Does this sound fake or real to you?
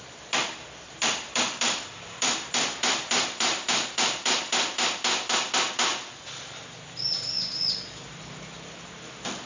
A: fake